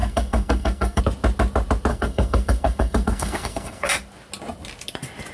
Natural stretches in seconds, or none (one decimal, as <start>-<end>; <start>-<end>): 1.0-1.9; 3.9-5.3